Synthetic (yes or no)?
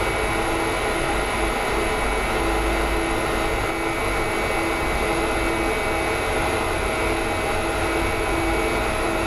no